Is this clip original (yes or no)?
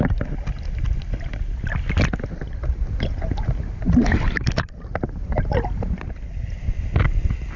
yes